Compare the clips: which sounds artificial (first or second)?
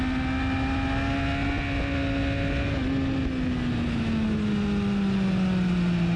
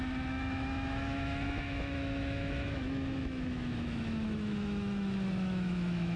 second